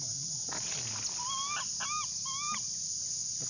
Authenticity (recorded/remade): recorded